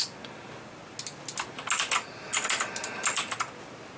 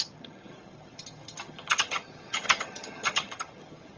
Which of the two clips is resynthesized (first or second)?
second